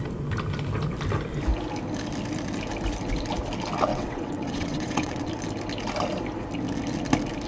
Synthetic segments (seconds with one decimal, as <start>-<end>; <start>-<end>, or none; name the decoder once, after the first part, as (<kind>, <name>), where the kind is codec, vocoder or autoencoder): 3.9-5.3 (vocoder, WaveNeXt)